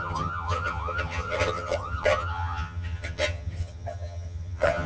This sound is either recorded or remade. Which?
remade